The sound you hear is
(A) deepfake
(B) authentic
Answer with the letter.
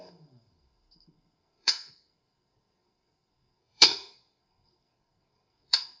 A